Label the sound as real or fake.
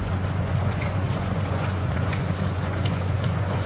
fake